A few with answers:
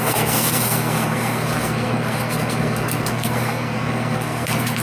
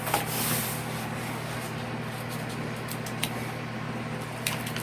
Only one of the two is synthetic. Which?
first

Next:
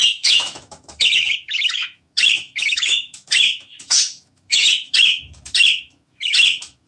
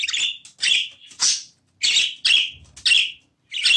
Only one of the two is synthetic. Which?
first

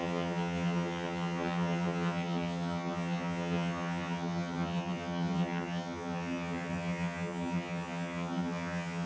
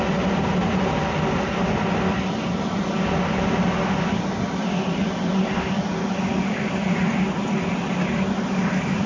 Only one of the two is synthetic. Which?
first